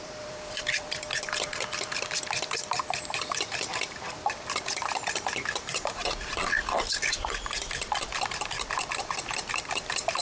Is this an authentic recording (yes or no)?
no